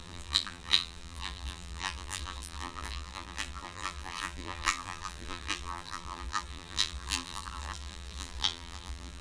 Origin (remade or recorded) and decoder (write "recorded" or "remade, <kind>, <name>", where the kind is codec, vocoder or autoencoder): remade, vocoder, BigVGAN v2